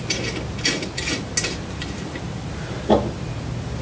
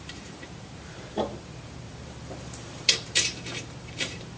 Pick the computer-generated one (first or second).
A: second